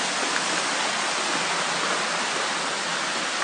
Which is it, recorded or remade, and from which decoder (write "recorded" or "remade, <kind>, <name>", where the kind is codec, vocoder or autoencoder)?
recorded